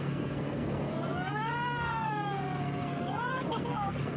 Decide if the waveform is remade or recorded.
remade